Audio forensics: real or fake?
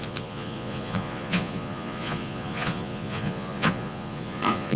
fake